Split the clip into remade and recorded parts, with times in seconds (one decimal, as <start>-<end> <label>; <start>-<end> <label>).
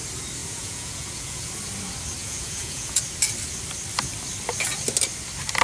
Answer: 0.0-0.4 recorded; 0.4-1.5 remade; 1.5-2.2 recorded; 2.2-3.0 remade; 3.0-5.6 recorded